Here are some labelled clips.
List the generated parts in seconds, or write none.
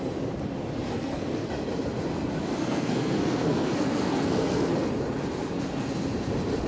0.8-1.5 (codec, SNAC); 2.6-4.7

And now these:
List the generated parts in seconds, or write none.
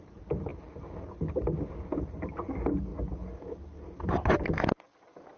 none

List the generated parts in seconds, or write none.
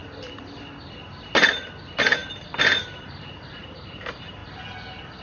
1.8-2.2 (vocoder, BigVGAN v2); 2.9-4.4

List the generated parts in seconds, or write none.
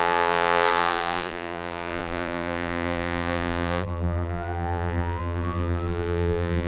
0.0-6.7 (vocoder, BigVGAN v2)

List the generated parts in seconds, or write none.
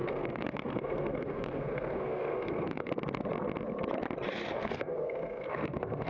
0.0-2.9 (codec, SNAC); 4.6-6.1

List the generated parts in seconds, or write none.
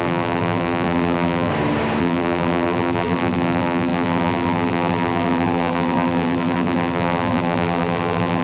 0.0-1.5 (vocoder, BigVGAN v2); 2.0-8.4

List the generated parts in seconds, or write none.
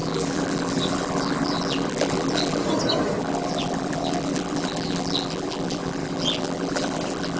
0.0-2.6 (vocoder, BigVGAN v2); 3.2-7.4